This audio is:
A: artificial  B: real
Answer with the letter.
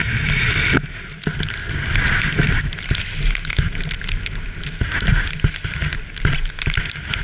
B